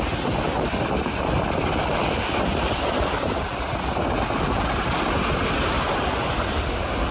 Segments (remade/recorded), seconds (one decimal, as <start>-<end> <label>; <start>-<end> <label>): 0.0-7.1 recorded